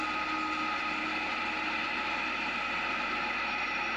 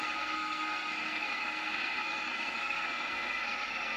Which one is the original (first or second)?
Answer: first